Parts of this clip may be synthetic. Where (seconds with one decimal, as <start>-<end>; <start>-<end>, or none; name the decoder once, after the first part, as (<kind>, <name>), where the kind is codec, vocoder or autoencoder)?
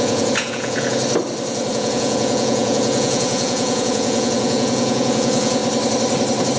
0.0-1.0 (vocoder, Vocos); 1.7-5.6